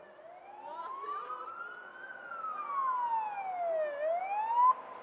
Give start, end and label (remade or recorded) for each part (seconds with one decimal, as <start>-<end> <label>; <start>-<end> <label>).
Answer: 0.0-5.0 recorded